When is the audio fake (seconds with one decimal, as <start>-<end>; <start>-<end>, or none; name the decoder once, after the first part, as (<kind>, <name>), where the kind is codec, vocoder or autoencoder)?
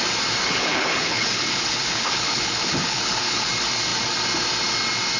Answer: 0.4-3.5 (codec, HILCodec)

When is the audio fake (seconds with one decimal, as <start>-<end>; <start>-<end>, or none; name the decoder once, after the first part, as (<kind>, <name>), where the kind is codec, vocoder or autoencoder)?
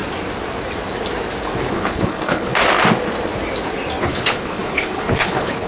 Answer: 1.7-2.5 (codec, HILCodec); 4.0-5.7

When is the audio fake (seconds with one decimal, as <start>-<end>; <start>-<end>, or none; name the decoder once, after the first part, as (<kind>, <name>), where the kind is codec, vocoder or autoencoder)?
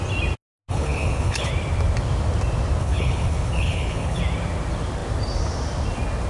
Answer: 0.7-1.5 (codec, HILCodec); 2.8-4.2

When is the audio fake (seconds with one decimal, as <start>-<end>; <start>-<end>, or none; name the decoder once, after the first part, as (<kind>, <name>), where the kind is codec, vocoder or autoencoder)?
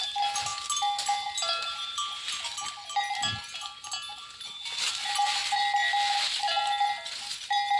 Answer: none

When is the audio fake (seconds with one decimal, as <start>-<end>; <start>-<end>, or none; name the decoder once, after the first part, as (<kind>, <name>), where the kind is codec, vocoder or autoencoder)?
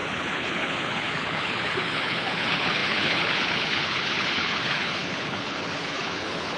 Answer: 0.0-6.6 (codec, HILCodec)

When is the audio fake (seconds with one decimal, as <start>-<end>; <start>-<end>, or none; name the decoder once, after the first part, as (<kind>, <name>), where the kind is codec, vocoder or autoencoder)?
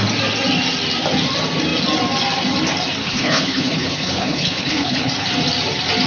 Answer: 3.0-5.1 (codec, HILCodec)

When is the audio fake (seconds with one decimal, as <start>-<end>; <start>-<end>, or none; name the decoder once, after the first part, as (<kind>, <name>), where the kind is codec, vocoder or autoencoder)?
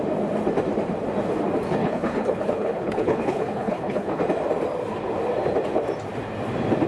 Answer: 1.8-4.2 (codec, HILCodec)